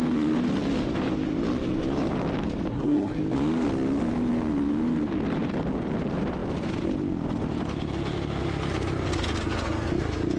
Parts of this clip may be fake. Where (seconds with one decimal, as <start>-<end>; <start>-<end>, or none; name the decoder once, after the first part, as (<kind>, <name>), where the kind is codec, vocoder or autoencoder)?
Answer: 2.7-3.2 (codec, SNAC)